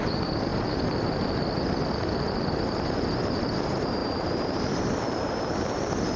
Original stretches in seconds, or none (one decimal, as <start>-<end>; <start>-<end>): 0.0-4.0; 5.7-6.2